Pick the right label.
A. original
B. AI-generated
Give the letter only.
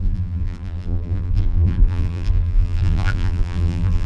B